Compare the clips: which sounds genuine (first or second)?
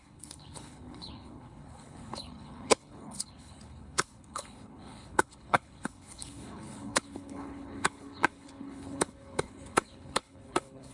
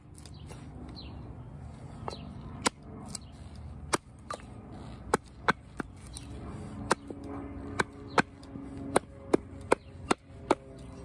second